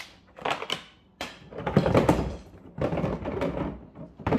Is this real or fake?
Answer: real